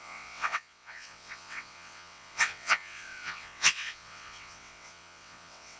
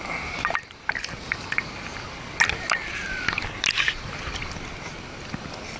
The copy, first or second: first